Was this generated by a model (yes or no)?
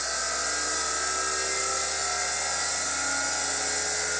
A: no